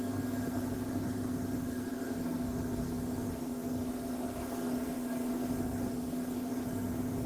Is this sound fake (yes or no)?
yes